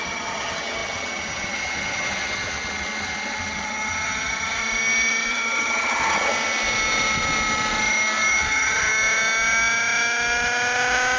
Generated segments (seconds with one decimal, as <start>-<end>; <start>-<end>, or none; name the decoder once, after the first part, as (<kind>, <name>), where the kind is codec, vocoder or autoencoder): 0.0-4.6 (vocoder, HiFi-GAN); 5.3-6.3; 8.5-8.9